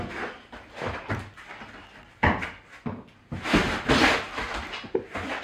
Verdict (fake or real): real